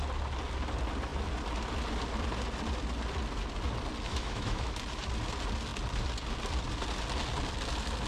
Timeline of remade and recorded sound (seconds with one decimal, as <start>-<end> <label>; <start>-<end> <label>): 0.0-4.1 recorded; 4.1-4.7 remade; 4.7-8.1 recorded